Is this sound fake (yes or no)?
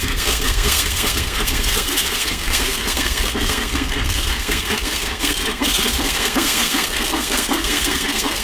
yes